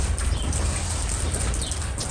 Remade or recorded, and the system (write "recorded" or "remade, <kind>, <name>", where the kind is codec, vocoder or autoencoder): remade, vocoder, BigVGAN v2